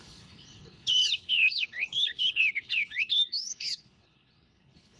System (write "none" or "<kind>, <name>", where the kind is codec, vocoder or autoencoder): codec, HILCodec